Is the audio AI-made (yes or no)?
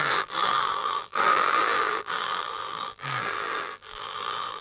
yes